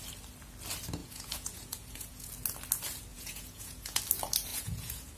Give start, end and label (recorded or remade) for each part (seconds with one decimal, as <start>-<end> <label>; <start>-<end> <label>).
0.0-1.0 recorded; 1.0-2.3 remade; 2.3-3.1 recorded; 3.1-4.0 remade; 4.0-4.5 recorded; 4.5-5.2 remade